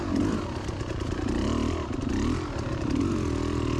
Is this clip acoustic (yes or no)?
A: yes